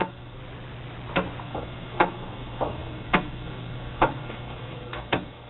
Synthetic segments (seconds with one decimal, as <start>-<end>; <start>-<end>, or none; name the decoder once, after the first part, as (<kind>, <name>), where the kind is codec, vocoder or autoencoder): 0.0-0.4 (codec, SNAC); 1.4-5.5